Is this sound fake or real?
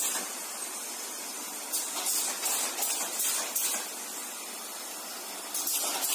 real